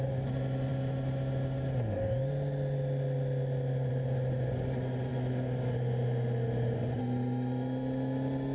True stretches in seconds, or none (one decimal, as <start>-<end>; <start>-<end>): 0.0-8.5